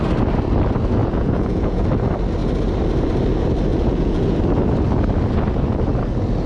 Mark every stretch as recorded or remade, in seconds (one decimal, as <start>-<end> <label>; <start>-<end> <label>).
0.0-1.0 recorded; 1.0-1.9 remade; 1.9-3.7 recorded; 3.7-4.4 remade; 4.4-6.5 recorded